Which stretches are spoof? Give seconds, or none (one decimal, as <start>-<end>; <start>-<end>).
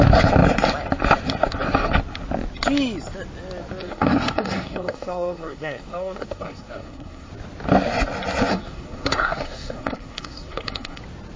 3.8-7.3; 8.5-11.0